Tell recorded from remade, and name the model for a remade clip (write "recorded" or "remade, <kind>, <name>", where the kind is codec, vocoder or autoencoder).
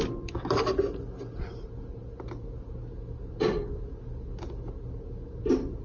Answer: recorded